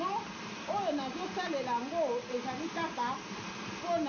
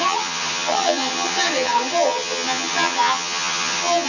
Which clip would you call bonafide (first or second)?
first